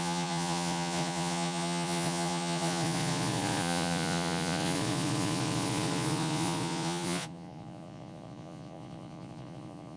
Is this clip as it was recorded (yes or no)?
no